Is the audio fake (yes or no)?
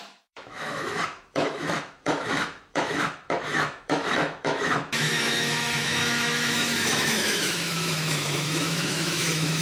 yes